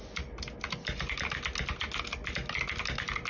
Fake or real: real